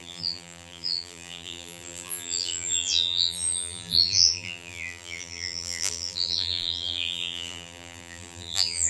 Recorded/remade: remade